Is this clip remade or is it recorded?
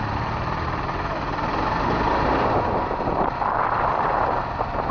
recorded